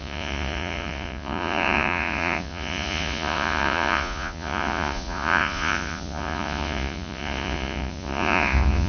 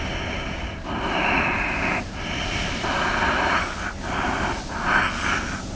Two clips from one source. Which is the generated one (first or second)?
first